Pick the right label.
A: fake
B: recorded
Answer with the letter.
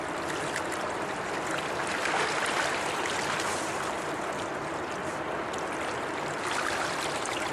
A